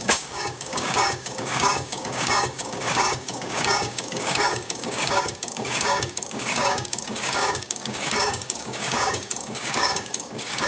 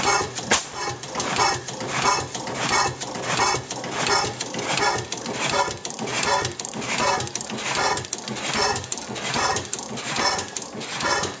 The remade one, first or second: first